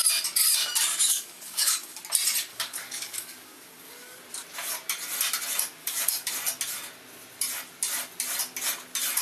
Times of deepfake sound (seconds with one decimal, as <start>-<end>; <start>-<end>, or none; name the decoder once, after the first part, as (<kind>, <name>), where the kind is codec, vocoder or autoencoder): 0.9-2.0 (codec, DAC); 2.5-4.2; 5.8-6.3